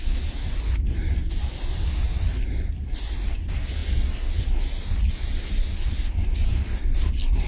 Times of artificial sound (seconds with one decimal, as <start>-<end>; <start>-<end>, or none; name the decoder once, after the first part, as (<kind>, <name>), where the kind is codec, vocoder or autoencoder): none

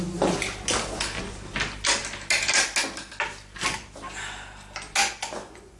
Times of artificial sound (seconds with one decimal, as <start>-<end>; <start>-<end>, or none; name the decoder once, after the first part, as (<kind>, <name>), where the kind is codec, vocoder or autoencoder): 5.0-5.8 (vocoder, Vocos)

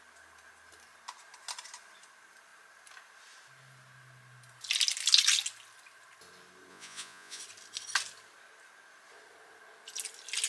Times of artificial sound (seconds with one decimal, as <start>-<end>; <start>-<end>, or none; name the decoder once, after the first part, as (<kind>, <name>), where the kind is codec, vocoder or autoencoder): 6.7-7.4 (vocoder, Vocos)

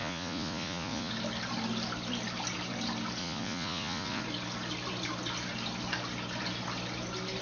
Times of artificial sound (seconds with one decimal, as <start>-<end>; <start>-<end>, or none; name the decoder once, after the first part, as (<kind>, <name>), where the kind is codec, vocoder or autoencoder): 0.0-1.1 (vocoder, Vocos); 3.2-4.2